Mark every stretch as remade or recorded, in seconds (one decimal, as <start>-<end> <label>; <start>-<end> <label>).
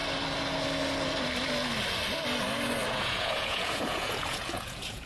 0.0-2.9 recorded; 2.9-5.1 remade